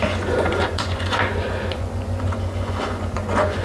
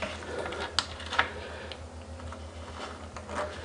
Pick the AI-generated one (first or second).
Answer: first